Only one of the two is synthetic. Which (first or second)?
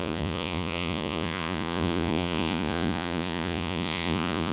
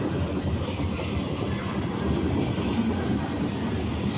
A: first